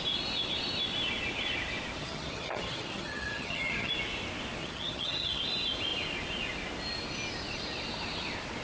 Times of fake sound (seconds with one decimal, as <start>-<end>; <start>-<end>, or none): 2.0-3.9; 4.6-5.4